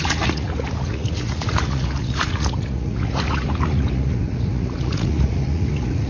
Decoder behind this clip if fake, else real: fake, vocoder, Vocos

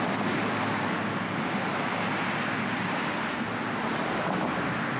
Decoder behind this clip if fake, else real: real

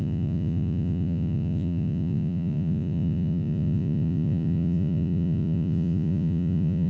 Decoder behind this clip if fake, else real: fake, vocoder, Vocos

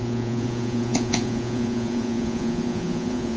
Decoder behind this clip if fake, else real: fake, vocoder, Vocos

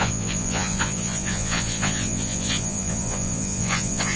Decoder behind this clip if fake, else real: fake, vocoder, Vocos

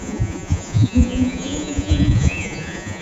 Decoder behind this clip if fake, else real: fake, vocoder, Vocos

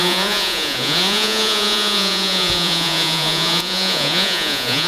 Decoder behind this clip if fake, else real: fake, vocoder, Vocos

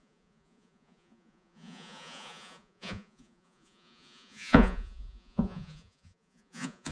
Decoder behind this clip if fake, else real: fake, vocoder, Vocos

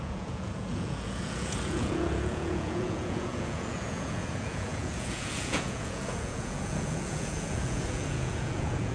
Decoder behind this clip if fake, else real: fake, vocoder, Vocos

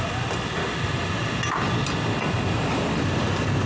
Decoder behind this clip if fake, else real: real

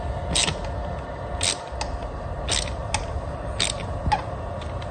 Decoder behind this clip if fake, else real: real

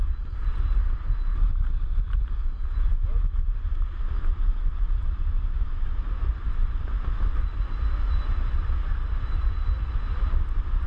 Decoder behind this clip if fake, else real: real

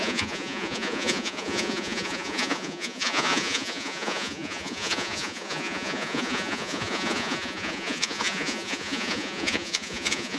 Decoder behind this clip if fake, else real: fake, vocoder, Vocos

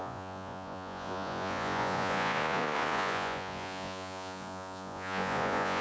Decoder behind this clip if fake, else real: fake, vocoder, Vocos